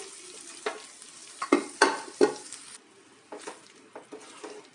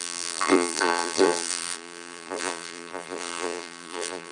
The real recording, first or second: first